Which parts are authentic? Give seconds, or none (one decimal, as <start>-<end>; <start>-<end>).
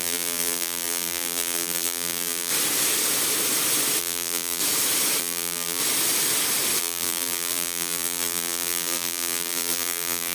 2.5-4.0; 4.6-5.2; 5.8-6.8